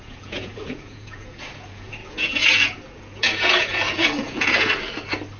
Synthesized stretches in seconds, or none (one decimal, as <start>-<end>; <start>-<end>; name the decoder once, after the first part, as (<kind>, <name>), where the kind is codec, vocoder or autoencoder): 0.0-4.7 (vocoder, Vocos)